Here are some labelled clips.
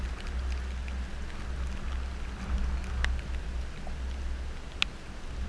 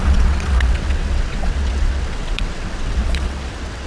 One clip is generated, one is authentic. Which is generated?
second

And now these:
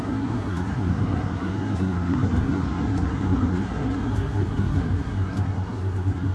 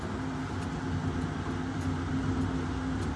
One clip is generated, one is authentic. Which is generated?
first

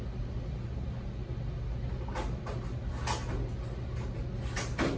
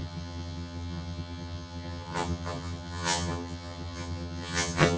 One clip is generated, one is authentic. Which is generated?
second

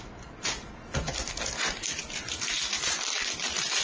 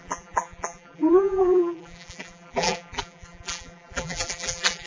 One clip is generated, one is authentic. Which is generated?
second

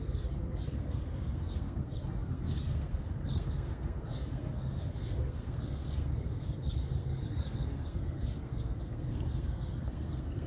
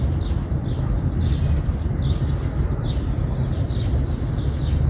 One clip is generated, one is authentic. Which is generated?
first